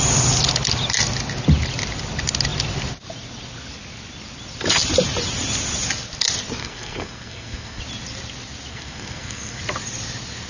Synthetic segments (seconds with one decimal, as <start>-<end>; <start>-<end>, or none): 6.6-7.8; 8.7-9.6